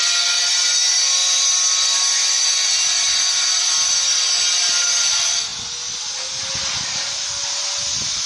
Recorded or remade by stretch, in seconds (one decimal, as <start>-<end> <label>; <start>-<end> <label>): 0.0-8.3 recorded